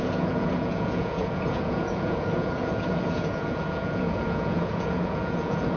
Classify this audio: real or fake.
fake